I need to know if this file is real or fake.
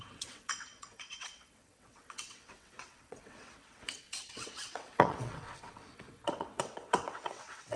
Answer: fake